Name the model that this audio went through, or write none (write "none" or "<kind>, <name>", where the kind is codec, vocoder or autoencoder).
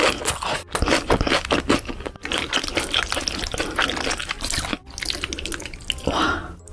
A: none